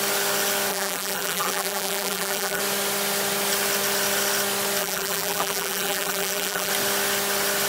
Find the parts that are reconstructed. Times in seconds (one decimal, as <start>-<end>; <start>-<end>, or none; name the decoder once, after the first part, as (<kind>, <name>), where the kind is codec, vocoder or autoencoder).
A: 0.7-2.6 (vocoder, BigVGAN v2); 4.8-6.7

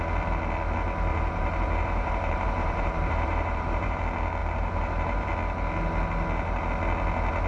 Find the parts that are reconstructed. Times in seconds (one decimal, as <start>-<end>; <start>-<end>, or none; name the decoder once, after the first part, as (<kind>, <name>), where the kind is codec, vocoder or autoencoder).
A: 1.1-4.0 (vocoder, BigVGAN v2); 4.4-5.3

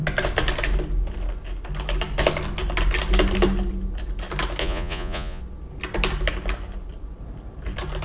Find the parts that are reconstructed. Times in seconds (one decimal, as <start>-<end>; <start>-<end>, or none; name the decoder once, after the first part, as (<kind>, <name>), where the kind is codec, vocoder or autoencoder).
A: 4.6-5.4 (vocoder, Vocos)

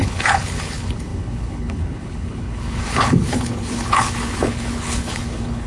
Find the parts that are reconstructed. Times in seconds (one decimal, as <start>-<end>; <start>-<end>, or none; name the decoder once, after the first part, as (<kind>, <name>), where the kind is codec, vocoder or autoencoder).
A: 0.0-5.7 (codec, HILCodec)

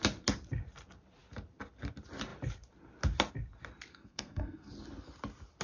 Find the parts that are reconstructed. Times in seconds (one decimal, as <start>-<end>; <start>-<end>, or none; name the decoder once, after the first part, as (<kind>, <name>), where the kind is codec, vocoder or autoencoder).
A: 3.9-4.7 (codec, SNAC)